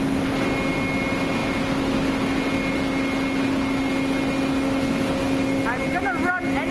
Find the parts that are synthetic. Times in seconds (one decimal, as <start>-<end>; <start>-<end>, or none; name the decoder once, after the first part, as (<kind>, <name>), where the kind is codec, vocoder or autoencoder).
none